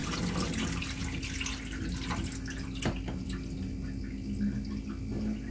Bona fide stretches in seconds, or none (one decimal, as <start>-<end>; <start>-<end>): 0.0-5.5